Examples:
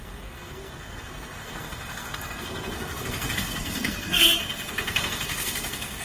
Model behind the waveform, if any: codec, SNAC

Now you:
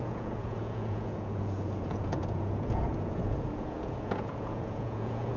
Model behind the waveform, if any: vocoder, Vocos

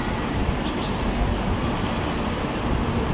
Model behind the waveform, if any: none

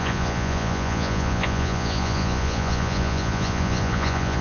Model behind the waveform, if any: vocoder, Vocos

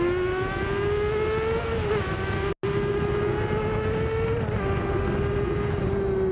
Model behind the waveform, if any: none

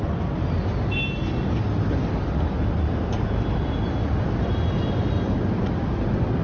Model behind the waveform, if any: none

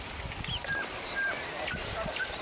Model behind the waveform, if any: none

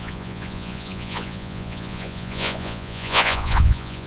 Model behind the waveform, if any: vocoder, Vocos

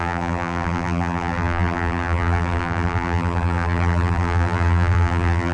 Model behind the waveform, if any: vocoder, BigVGAN v2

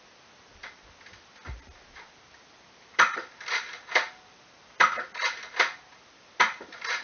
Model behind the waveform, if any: none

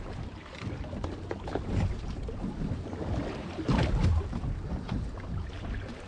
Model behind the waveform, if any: none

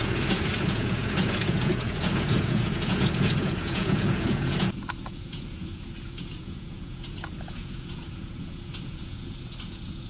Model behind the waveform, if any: vocoder, Vocos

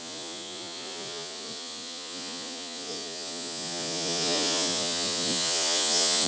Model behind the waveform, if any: vocoder, Vocos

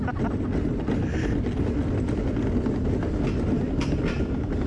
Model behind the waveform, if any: none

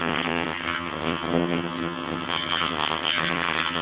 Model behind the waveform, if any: vocoder, HiFi-GAN